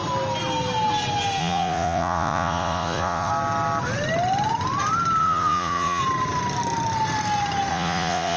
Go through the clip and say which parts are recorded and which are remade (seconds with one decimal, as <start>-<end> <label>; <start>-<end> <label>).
0.0-1.4 recorded; 1.4-3.3 remade; 3.3-5.2 recorded; 5.2-6.0 remade; 6.0-7.7 recorded; 7.7-8.4 remade